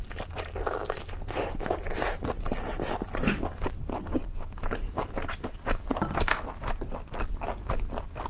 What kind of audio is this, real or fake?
real